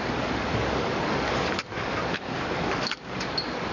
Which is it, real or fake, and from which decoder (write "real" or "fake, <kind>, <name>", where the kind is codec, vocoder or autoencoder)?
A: fake, codec, DAC